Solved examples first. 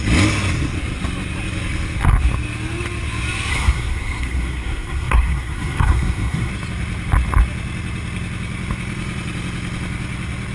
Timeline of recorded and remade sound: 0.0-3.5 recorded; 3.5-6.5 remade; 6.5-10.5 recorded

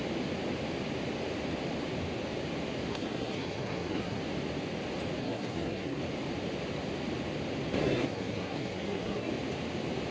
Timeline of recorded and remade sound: 0.0-2.9 recorded; 2.9-4.2 remade; 4.2-5.2 recorded; 5.2-6.0 remade; 6.0-7.8 recorded; 7.8-9.3 remade; 9.3-10.1 recorded

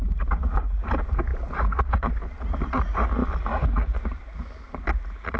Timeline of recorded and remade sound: 0.0-5.4 recorded